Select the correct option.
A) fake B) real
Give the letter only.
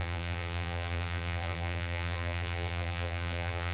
A